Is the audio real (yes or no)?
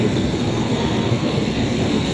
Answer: no